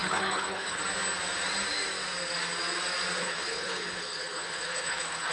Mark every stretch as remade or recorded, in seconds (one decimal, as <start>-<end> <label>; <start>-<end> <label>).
0.0-0.8 remade; 0.8-3.2 recorded; 3.2-5.3 remade